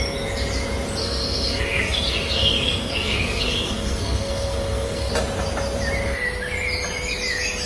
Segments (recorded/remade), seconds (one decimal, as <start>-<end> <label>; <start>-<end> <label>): 0.0-1.0 recorded; 1.0-5.1 remade; 5.1-7.7 recorded